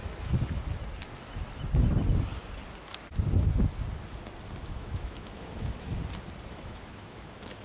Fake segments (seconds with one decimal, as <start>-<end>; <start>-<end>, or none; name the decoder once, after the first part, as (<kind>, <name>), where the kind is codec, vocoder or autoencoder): 4.6-5.9 (autoencoder, DAC-VAE); 6.5-7.6